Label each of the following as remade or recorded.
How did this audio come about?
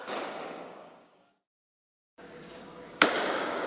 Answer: remade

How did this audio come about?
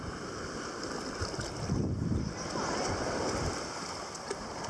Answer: recorded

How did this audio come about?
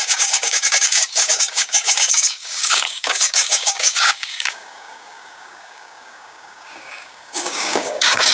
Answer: remade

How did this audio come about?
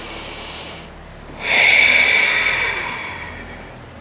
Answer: recorded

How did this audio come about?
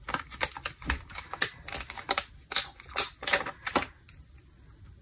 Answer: recorded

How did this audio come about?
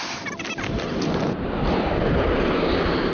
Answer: recorded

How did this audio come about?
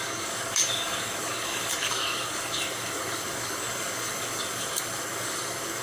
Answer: remade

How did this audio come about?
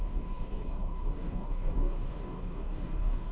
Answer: remade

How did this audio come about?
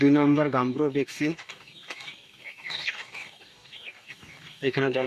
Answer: remade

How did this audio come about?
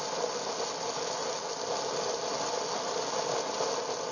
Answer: recorded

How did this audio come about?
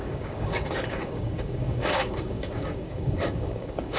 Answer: remade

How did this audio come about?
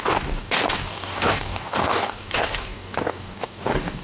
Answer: remade